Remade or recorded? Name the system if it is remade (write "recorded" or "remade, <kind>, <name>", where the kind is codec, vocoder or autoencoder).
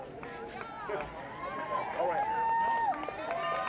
recorded